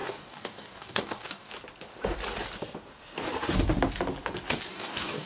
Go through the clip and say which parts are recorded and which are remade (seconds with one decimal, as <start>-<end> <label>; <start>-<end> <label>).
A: 0.0-1.5 remade; 1.5-4.7 recorded; 4.7-5.3 remade